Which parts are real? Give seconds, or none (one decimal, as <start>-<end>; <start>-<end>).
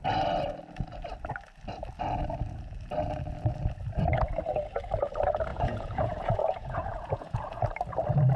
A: 0.0-5.5; 7.6-8.4